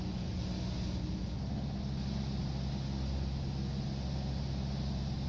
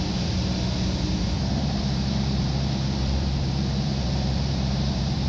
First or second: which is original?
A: first